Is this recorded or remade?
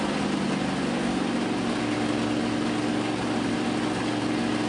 recorded